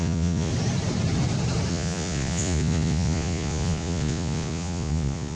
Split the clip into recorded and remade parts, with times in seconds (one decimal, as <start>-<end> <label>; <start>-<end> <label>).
0.0-0.5 remade; 0.5-1.7 recorded; 1.7-5.4 remade